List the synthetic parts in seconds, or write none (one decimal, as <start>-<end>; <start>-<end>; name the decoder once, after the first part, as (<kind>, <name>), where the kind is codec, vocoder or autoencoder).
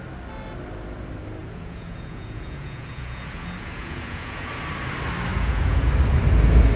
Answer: 1.4-4.5 (vocoder, Vocos); 5.3-5.9